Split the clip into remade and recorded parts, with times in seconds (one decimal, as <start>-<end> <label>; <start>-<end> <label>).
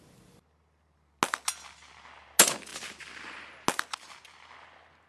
0.0-5.1 recorded